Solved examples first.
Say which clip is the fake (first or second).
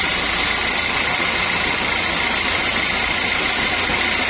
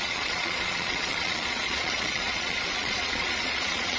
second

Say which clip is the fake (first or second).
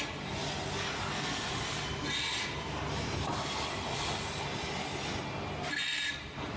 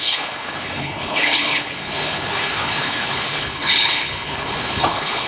second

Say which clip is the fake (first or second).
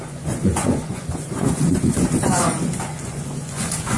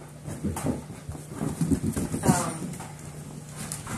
first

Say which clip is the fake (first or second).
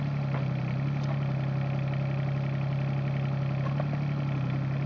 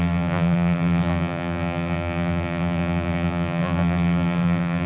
second